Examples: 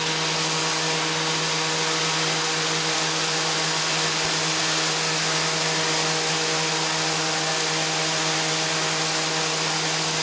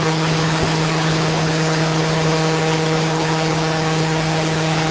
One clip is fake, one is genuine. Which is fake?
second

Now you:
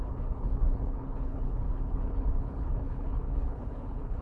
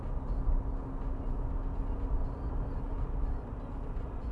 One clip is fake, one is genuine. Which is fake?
first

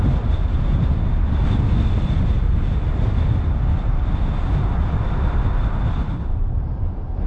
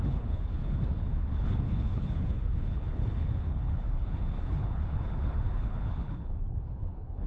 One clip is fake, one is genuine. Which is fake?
second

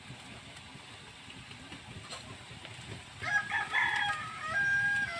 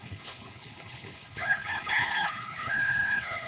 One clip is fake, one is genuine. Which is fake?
second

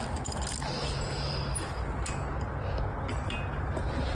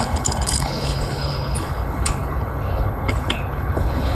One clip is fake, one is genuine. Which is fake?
second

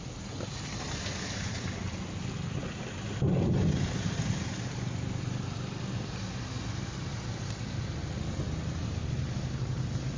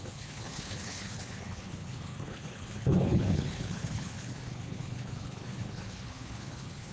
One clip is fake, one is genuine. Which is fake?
second